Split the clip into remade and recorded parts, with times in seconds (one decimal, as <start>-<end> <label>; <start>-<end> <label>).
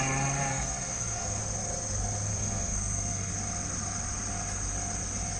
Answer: 0.0-0.5 recorded; 0.5-1.4 remade; 1.4-2.3 recorded; 2.3-3.3 remade; 3.3-5.4 recorded